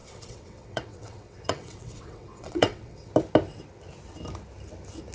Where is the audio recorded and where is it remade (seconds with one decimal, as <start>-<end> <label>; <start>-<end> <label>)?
0.0-3.1 remade; 3.1-5.1 recorded